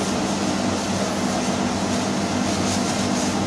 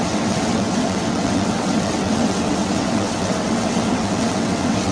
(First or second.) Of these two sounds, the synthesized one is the second